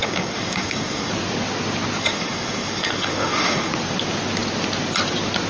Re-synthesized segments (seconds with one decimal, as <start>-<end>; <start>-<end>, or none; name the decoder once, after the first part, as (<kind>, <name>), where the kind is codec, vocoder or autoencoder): 0.0-1.1 (codec, DAC); 2.0-3.7